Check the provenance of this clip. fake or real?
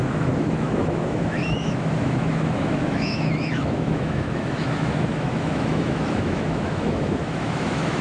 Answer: fake